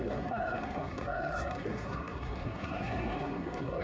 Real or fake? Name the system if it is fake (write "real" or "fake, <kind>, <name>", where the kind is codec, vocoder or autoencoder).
fake, codec, SNAC